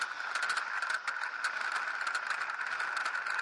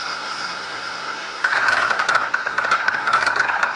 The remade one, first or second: second